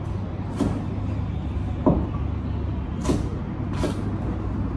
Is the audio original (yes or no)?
yes